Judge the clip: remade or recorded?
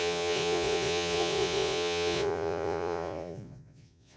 remade